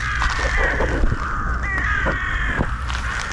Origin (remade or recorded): recorded